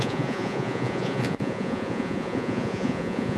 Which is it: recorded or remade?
remade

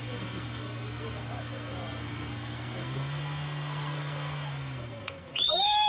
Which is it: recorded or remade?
remade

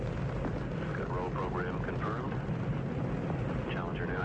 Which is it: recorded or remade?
recorded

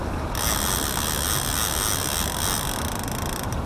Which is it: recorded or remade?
recorded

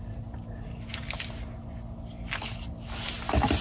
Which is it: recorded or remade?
recorded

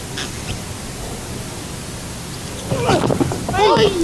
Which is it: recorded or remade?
recorded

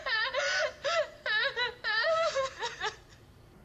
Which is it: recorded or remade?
remade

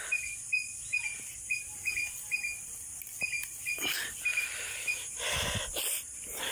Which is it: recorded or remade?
recorded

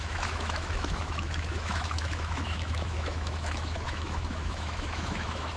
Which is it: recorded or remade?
remade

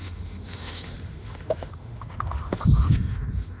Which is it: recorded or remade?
remade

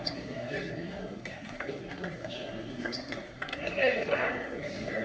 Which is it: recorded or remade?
remade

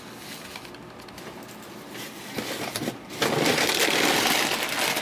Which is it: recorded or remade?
recorded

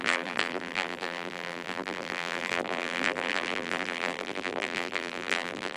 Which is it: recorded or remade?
remade